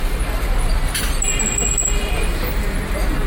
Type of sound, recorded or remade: recorded